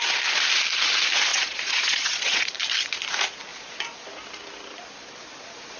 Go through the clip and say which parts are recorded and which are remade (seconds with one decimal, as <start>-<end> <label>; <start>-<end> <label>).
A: 0.0-1.3 recorded; 1.3-2.5 remade; 2.5-5.8 recorded